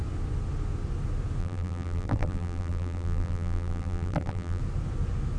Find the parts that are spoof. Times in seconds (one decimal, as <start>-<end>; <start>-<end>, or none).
1.4-4.6